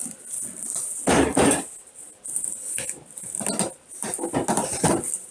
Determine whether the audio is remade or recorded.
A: recorded